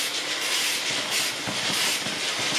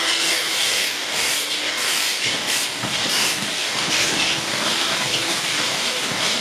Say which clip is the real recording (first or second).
first